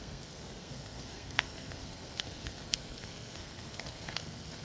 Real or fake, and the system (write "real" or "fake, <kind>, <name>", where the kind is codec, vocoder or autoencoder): fake, codec, SNAC